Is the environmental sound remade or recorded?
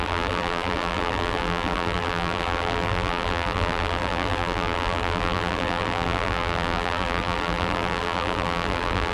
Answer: remade